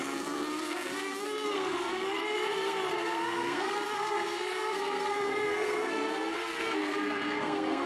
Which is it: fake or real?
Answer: fake